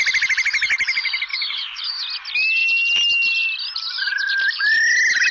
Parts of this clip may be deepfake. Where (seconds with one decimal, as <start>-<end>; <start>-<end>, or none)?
1.3-1.9